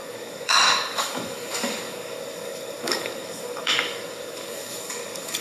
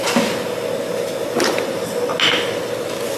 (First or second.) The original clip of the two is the second